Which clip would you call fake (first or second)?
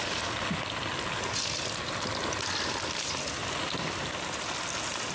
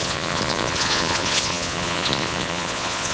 second